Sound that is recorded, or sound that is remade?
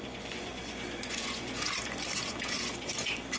remade